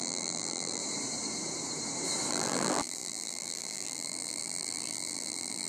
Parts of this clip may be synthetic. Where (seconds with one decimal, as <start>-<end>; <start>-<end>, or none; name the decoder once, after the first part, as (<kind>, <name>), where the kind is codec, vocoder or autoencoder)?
0.0-0.8 (vocoder, BigVGAN v2); 2.3-5.7